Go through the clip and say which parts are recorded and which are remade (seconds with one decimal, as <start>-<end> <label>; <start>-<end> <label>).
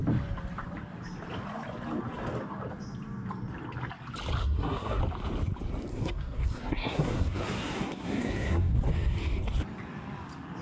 0.0-4.4 recorded; 4.4-5.0 remade; 5.0-5.9 recorded; 5.9-8.8 remade; 8.8-10.6 recorded